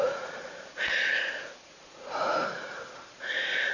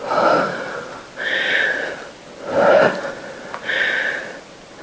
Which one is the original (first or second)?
second